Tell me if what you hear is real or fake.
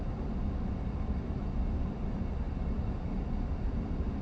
real